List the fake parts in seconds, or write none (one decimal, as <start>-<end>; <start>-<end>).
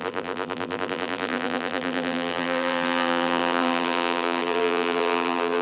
0.0-5.6